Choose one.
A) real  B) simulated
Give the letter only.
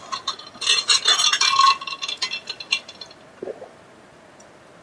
A